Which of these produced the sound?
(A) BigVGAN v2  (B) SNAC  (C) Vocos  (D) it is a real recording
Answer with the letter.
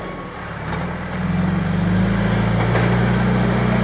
D